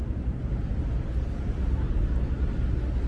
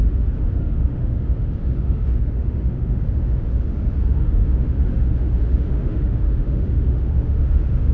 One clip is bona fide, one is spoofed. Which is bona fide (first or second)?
first